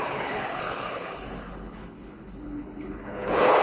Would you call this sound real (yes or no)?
no